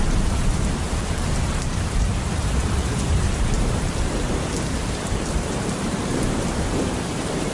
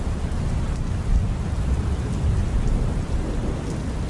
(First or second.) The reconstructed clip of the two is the first